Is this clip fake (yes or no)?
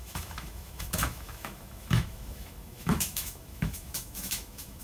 yes